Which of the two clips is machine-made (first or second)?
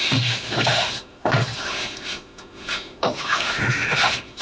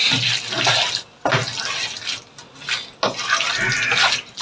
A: first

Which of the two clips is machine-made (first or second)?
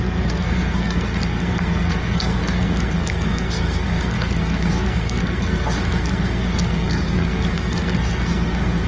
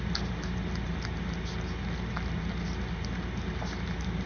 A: first